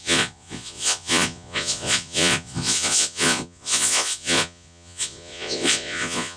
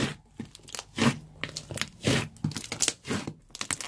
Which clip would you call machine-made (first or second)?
first